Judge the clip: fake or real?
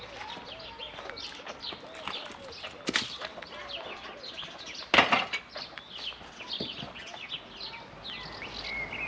real